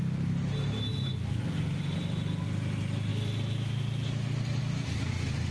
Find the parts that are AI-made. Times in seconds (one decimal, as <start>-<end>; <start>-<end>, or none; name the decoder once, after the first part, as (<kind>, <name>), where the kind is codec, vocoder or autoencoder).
none